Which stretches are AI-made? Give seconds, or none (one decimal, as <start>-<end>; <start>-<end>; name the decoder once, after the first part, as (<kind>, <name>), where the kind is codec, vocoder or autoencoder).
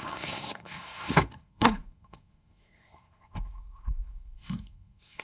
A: 0.0-5.2 (codec, SNAC)